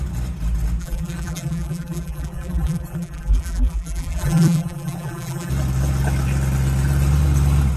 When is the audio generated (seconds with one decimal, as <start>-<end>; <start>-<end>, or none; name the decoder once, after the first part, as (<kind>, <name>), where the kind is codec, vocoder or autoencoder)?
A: 0.8-5.5 (vocoder, BigVGAN v2)